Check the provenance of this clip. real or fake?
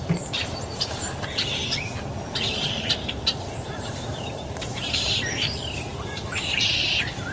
fake